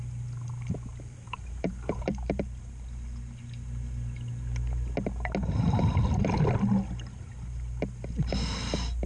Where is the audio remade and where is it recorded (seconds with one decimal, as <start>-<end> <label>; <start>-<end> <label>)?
0.0-0.9 recorded; 0.9-2.7 remade; 2.7-9.1 recorded